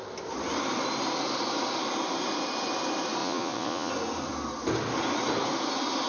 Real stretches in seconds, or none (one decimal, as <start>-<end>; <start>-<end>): 0.0-3.2; 3.9-6.1